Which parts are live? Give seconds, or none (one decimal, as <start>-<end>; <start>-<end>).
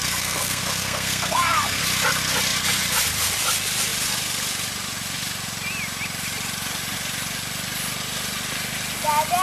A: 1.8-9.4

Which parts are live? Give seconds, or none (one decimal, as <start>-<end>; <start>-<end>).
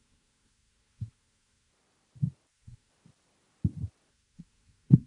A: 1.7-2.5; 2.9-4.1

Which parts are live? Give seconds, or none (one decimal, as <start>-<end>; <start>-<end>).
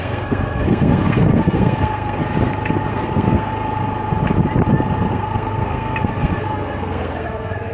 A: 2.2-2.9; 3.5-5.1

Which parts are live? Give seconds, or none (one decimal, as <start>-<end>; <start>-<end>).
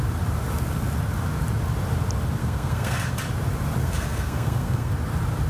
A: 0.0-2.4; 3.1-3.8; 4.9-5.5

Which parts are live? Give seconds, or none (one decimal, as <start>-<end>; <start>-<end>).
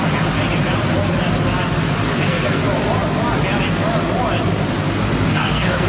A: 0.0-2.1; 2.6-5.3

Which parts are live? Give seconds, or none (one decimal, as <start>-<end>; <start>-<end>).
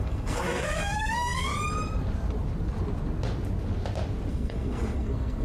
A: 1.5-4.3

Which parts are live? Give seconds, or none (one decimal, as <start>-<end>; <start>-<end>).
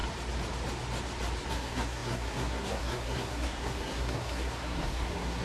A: 0.0-1.5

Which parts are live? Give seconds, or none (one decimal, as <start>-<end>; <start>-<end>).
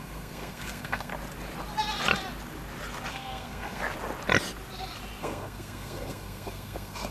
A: 1.1-3.1; 3.8-5.2